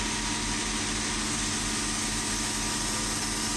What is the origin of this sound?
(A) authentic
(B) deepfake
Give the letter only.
A